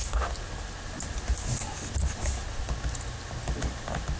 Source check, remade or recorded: recorded